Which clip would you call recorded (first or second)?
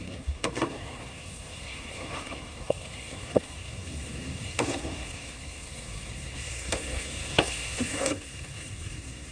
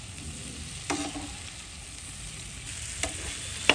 second